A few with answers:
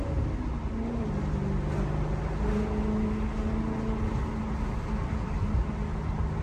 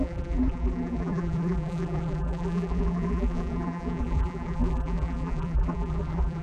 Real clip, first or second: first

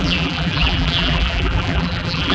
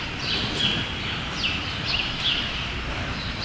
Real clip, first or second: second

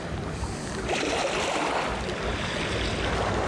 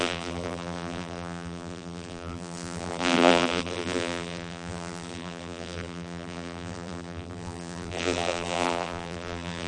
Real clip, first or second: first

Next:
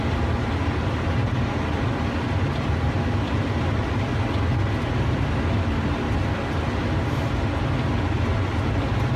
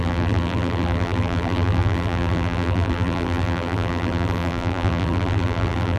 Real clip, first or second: first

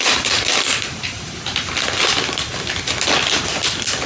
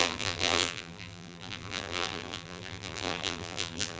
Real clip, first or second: first